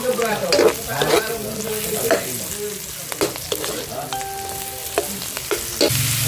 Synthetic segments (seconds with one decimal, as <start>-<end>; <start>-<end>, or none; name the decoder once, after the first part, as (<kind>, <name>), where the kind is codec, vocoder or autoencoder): 0.9-1.6 (vocoder, BigVGAN v2)